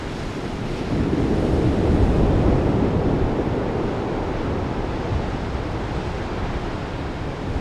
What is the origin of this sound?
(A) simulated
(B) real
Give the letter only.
A